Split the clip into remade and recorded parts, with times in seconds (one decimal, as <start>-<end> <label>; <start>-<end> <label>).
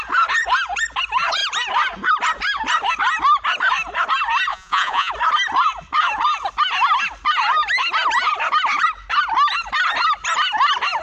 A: 0.0-4.5 recorded; 4.5-5.1 remade; 5.1-11.0 recorded